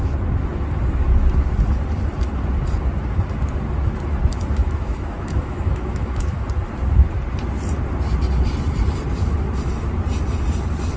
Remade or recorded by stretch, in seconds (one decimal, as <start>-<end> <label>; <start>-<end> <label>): 0.0-4.6 recorded; 4.6-6.5 remade; 6.5-11.0 recorded